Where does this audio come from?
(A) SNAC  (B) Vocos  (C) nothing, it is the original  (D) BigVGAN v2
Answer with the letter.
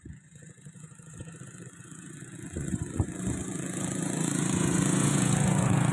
B